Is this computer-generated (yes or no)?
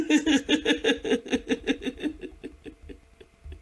no